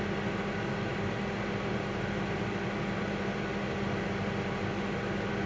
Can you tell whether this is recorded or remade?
recorded